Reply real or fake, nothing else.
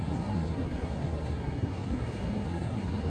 fake